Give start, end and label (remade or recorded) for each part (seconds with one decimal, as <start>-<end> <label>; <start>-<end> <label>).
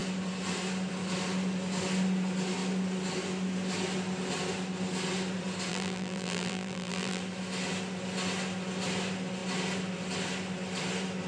0.0-5.7 recorded; 5.7-7.2 remade; 7.2-11.3 recorded